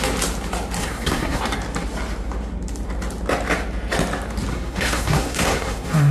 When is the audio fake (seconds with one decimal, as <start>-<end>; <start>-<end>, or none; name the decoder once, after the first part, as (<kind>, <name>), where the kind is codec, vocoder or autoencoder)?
0.8-1.4 (codec, SNAC); 4.5-6.1